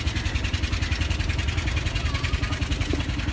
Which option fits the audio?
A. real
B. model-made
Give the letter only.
A